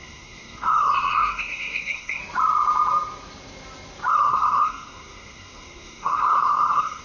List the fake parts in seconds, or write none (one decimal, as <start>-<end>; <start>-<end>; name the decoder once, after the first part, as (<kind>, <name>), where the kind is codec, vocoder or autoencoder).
0.0-2.2 (codec, SNAC); 4.1-7.0